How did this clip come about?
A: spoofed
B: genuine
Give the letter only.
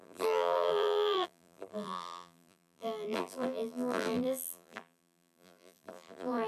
A